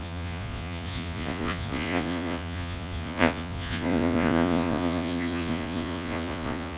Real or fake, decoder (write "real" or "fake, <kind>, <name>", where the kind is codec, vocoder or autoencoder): fake, vocoder, Vocos